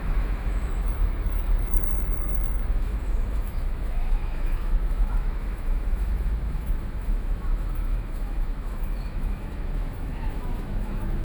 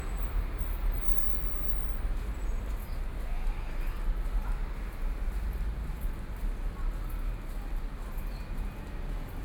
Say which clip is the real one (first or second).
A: second